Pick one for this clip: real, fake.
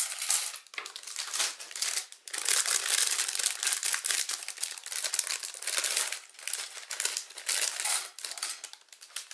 real